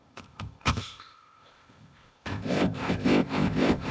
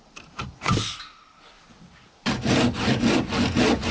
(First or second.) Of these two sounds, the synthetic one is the first